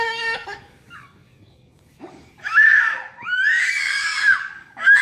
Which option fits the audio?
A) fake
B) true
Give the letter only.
A